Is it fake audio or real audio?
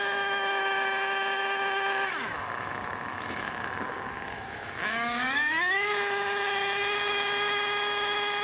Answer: fake